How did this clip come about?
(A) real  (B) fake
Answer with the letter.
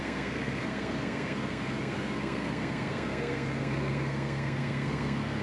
B